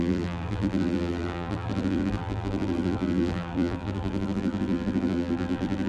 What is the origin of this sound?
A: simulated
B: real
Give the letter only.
A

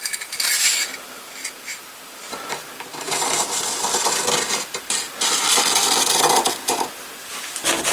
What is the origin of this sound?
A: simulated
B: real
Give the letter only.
B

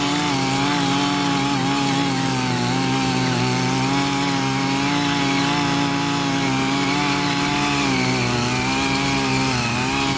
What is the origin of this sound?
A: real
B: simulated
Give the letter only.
A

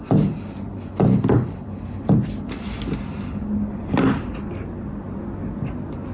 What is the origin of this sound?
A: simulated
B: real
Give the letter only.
B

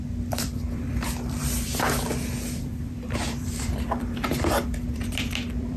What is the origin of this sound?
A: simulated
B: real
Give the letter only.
A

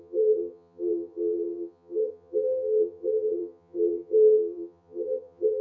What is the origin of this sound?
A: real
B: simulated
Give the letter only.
B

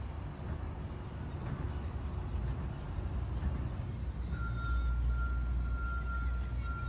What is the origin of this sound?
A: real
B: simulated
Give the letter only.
A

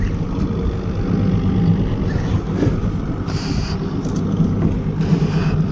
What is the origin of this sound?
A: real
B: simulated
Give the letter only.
A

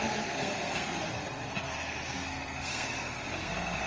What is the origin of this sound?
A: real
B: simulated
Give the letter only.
B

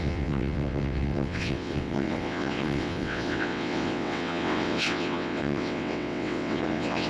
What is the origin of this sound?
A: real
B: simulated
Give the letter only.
B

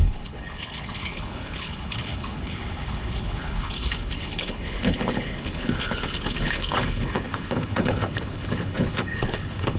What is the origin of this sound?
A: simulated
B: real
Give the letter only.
A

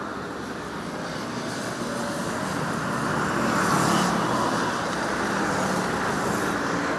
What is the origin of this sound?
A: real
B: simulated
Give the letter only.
A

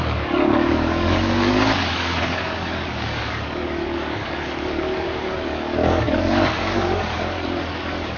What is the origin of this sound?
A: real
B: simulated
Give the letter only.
B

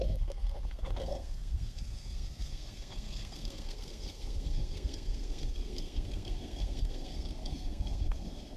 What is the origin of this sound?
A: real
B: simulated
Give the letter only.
B